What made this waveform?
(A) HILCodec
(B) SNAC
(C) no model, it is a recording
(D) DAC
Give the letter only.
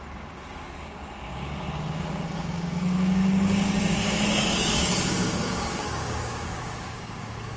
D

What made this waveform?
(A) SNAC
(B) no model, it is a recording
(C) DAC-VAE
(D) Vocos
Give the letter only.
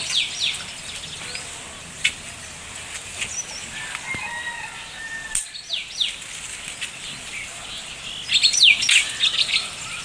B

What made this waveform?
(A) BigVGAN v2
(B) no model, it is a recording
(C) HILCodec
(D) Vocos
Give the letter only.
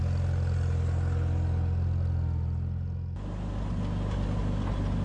B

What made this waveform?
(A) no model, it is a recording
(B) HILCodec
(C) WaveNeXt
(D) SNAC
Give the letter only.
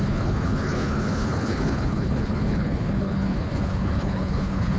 B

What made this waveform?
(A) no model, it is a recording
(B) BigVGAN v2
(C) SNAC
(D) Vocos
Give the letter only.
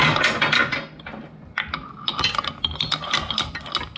A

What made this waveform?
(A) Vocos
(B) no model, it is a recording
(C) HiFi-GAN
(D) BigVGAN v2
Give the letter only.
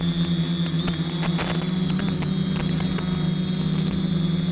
B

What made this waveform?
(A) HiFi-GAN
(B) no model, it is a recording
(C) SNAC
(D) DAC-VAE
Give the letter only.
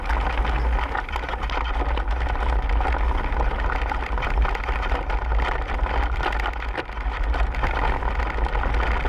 B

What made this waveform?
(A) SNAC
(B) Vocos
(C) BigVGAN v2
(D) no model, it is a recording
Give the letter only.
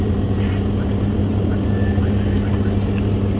D